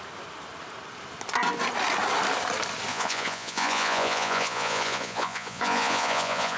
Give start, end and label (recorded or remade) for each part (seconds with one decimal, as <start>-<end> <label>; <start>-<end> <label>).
0.0-2.9 recorded; 2.9-6.6 remade

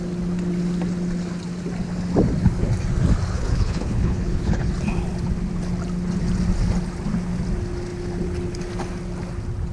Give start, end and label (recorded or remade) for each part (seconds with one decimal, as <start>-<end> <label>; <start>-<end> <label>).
0.0-3.3 recorded; 3.3-4.7 remade; 4.7-9.7 recorded

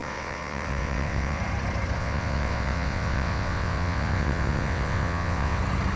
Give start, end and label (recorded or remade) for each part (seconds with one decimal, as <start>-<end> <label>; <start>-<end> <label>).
0.0-1.4 remade; 1.4-2.0 recorded; 2.0-5.6 remade; 5.6-6.0 recorded

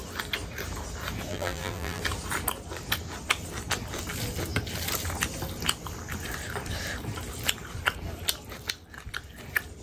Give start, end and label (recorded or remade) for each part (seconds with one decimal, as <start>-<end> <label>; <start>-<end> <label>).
0.0-1.3 recorded; 1.3-2.0 remade; 2.0-9.8 recorded